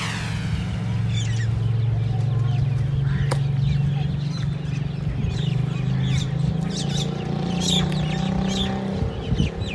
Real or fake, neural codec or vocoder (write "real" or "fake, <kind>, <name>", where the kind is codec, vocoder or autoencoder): real